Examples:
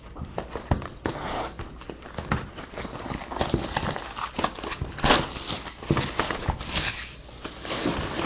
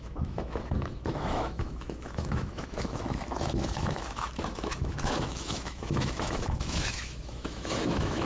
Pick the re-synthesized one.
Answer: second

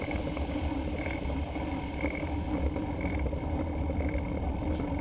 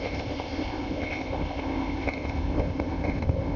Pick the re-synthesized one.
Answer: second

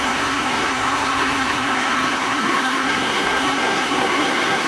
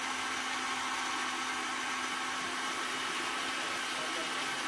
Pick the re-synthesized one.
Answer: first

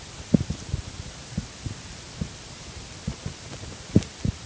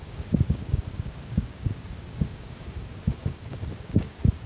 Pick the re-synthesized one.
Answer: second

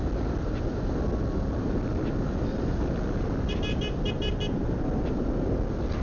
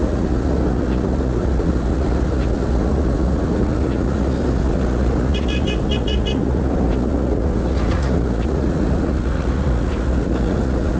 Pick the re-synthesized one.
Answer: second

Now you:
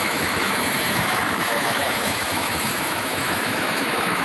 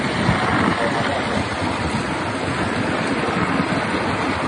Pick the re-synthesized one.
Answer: first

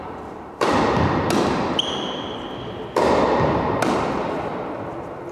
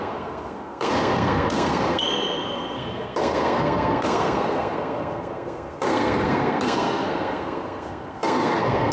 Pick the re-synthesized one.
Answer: second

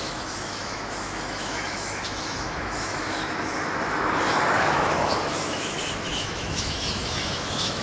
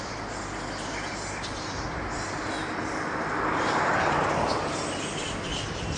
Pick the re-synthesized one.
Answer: first